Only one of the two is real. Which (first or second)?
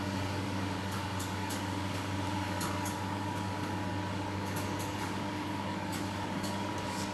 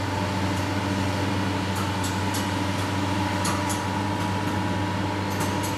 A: second